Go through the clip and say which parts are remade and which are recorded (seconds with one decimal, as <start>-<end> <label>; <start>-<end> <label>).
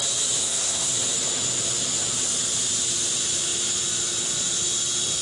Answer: 0.0-0.4 recorded; 0.4-0.9 remade; 0.9-5.2 recorded